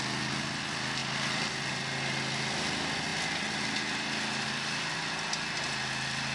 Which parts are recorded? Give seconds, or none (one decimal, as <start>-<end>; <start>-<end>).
0.0-6.3